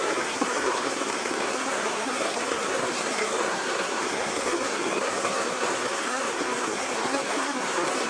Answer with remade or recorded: remade